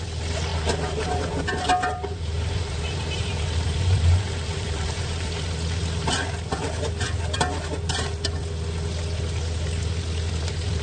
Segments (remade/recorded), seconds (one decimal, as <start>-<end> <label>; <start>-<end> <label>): 0.0-0.5 recorded; 0.5-5.3 remade; 5.3-10.8 recorded